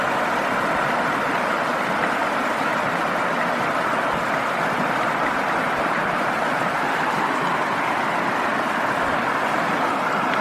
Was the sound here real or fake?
real